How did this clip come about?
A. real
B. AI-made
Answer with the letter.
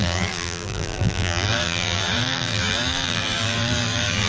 B